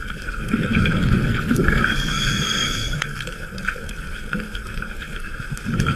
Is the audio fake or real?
fake